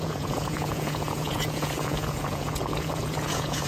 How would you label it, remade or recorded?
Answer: remade